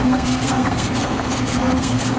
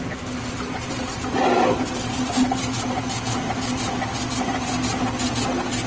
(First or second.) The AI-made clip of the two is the first